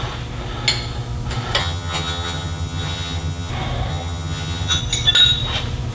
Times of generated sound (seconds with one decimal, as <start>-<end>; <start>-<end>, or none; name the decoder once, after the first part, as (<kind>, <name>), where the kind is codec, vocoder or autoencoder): 1.6-3.5 (vocoder, HiFi-GAN); 3.9-4.8